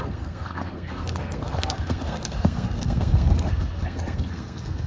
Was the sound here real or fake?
fake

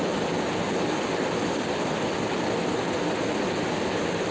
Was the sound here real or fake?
real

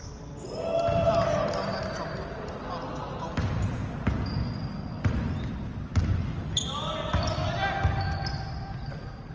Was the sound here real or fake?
real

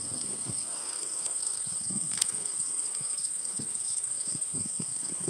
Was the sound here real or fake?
fake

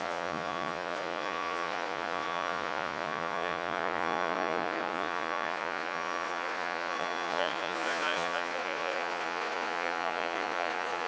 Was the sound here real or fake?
fake